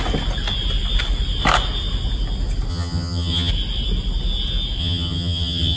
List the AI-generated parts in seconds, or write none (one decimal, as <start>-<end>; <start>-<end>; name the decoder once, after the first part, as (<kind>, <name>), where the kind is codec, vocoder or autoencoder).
2.7-3.5 (vocoder, HiFi-GAN); 4.8-5.8